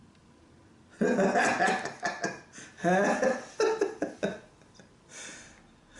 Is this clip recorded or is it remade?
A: recorded